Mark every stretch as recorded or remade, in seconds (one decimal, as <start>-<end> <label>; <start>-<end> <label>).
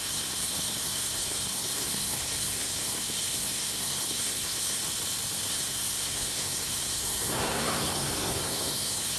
0.0-4.8 remade; 4.8-5.5 recorded; 5.5-9.2 remade